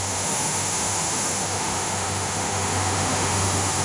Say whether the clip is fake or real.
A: fake